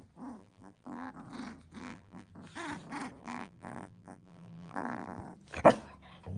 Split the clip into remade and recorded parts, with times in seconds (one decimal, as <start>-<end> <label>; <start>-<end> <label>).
0.0-0.4 recorded; 0.4-1.1 remade; 1.1-1.8 recorded; 1.8-2.3 remade; 2.3-3.2 recorded; 3.2-5.2 remade; 5.2-6.4 recorded